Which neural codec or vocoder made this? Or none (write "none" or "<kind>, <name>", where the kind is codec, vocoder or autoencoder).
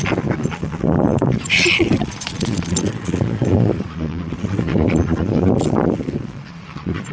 vocoder, Vocos